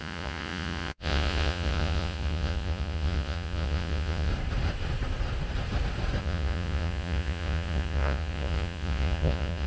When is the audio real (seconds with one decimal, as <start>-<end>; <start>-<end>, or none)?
4.3-6.2